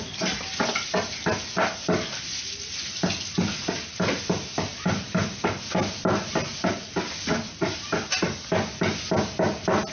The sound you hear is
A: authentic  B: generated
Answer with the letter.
A